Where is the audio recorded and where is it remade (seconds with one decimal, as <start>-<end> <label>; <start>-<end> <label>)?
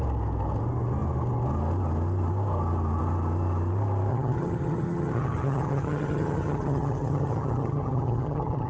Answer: 0.0-4.1 recorded; 4.1-8.7 remade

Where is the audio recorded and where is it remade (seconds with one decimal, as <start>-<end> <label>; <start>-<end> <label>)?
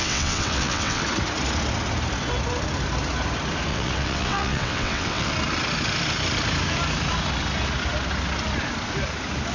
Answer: 0.0-1.0 remade; 1.0-3.7 recorded; 3.7-5.3 remade; 5.3-9.5 recorded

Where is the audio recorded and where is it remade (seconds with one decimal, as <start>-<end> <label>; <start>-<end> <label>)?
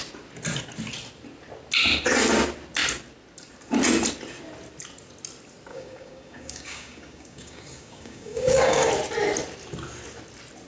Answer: 0.0-5.7 recorded; 5.7-8.9 remade; 8.9-10.7 recorded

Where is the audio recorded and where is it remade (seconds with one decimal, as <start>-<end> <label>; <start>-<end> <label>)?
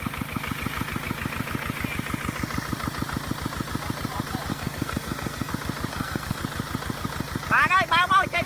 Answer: 0.0-4.5 recorded; 4.5-5.5 remade; 5.5-5.9 recorded; 5.9-6.4 remade; 6.4-8.5 recorded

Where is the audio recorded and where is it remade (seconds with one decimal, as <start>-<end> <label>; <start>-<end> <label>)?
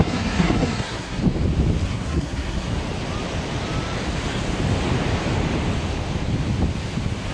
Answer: 0.0-1.2 remade; 1.2-1.9 recorded; 1.9-2.8 remade; 2.8-7.3 recorded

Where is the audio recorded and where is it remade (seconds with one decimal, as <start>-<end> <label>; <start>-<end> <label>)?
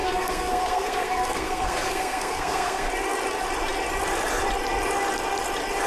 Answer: 0.0-2.9 remade; 2.9-5.9 recorded